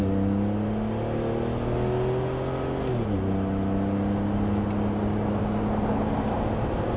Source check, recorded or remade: recorded